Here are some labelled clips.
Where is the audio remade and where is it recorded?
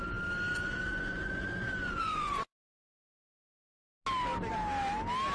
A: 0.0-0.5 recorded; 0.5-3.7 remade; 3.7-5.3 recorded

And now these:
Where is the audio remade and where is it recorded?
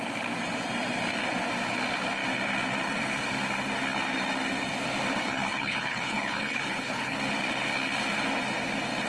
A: 0.0-5.2 recorded; 5.2-7.2 remade; 7.2-9.1 recorded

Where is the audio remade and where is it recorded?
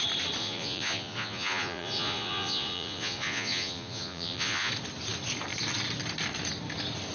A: 0.0-0.4 recorded; 0.4-4.7 remade; 4.7-7.1 recorded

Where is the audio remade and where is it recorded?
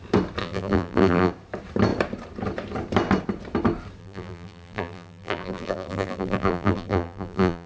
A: 0.0-0.4 recorded; 0.4-1.3 remade; 1.3-4.0 recorded; 4.0-7.7 remade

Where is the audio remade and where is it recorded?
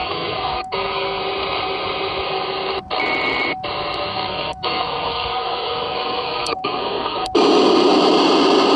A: 0.0-1.2 remade; 1.2-4.1 recorded; 4.1-7.3 remade; 7.3-8.8 recorded